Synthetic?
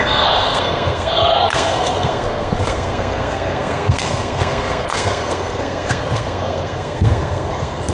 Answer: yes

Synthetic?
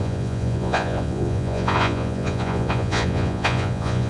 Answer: yes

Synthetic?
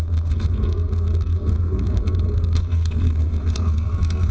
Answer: yes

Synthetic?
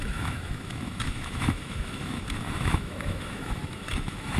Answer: yes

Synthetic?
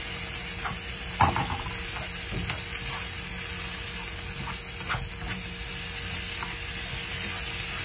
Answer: no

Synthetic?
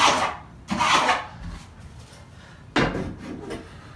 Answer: no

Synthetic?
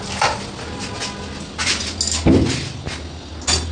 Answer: no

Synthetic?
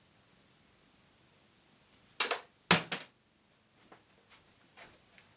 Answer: no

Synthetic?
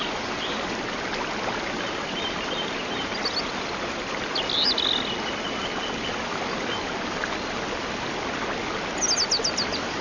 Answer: no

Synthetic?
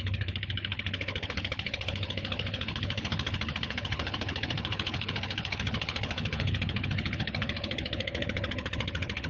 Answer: yes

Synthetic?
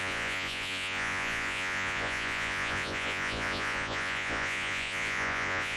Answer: yes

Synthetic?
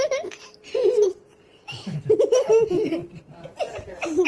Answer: yes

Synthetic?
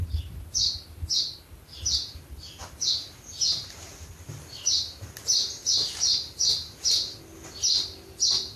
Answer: no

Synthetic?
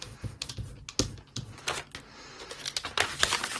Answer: no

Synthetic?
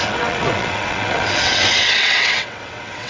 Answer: yes